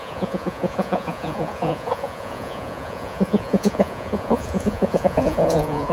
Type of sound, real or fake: fake